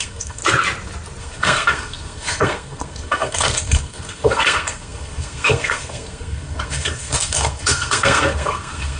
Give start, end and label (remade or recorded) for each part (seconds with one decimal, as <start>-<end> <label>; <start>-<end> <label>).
0.0-0.4 remade; 0.4-1.2 recorded; 1.2-9.0 remade